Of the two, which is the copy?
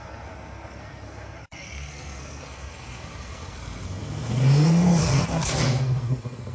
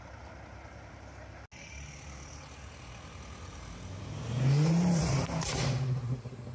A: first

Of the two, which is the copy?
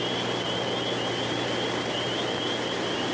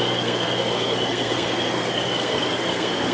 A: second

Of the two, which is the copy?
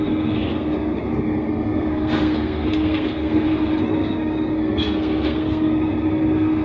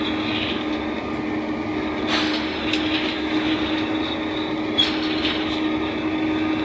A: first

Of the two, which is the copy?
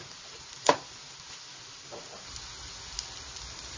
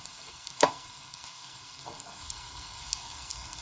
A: second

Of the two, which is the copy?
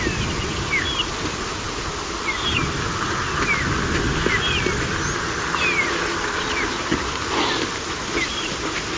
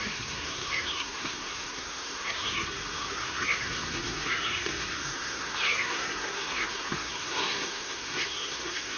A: second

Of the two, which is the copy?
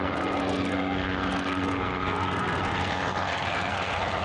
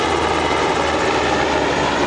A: first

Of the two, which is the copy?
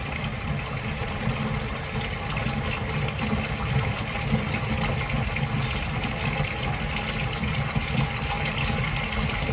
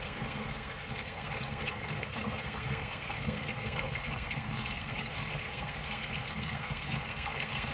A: second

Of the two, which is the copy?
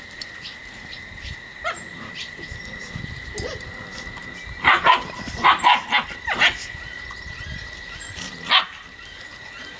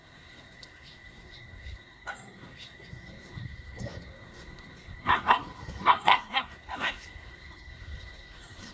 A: second